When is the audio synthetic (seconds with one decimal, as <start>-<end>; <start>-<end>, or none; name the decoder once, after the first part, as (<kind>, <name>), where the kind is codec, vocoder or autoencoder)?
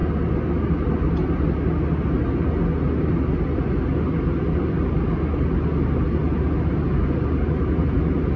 none